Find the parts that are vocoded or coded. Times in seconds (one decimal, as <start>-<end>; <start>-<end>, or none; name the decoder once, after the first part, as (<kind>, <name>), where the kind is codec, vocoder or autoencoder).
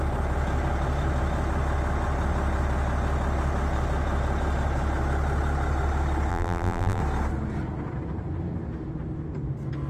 6.3-7.0 (vocoder, BigVGAN v2)